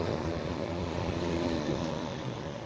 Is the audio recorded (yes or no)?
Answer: no